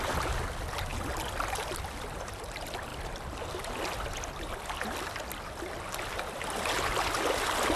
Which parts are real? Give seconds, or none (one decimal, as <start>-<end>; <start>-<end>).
0.0-0.9; 1.7-7.8